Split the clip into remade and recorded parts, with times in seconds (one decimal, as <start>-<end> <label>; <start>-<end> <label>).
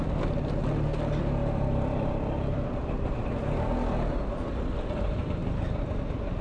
0.0-1.4 recorded; 1.4-3.1 remade; 3.1-5.4 recorded; 5.4-6.0 remade; 6.0-6.4 recorded